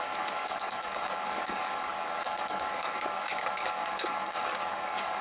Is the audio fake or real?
fake